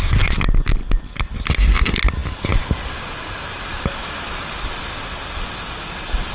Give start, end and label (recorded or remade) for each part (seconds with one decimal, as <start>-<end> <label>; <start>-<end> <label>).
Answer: 0.0-6.3 recorded